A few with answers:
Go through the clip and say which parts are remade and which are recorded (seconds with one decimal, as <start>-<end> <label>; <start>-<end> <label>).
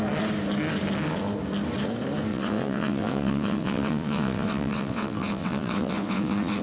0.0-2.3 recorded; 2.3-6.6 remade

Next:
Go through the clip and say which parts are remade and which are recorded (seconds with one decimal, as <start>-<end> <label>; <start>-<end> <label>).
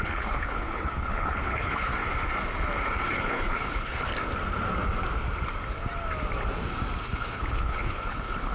0.0-1.9 remade; 1.9-3.1 recorded; 3.1-4.1 remade; 4.1-7.0 recorded; 7.0-8.5 remade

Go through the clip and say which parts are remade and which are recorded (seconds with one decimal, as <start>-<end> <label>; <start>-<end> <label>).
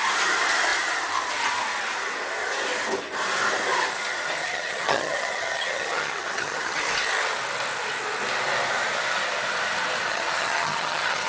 0.0-4.4 recorded; 4.4-6.8 remade; 6.8-10.1 recorded; 10.1-11.3 remade